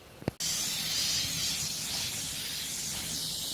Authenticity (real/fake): real